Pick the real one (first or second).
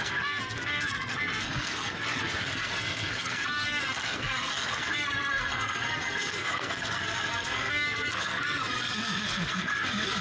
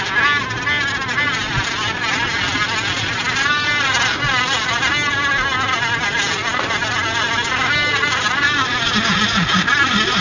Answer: second